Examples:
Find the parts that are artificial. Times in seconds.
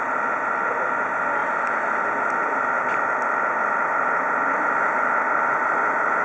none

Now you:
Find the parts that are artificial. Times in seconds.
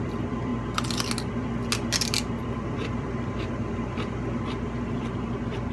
0.0-0.5 (vocoder, BigVGAN v2); 2.5-5.7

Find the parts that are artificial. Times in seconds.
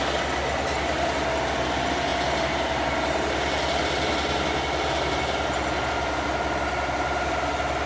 none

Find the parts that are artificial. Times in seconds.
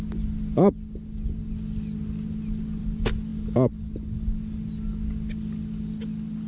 none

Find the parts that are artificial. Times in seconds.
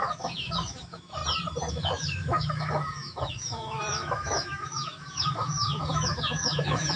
0.0-1.2 (autoencoder, DAC-VAE); 1.7-7.0